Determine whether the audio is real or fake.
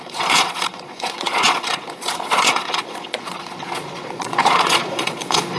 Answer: fake